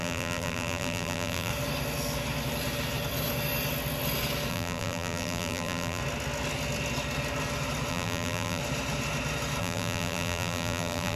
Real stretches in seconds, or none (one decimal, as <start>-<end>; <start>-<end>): 1.5-4.5; 6.0-7.9; 8.6-9.6